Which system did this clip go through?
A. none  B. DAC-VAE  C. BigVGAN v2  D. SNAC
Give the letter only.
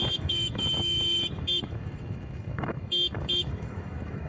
B